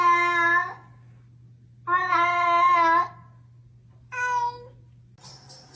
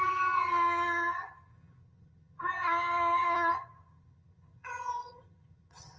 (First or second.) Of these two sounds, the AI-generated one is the second